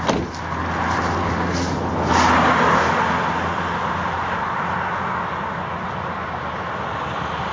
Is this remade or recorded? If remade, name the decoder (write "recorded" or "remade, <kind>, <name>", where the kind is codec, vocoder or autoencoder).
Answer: recorded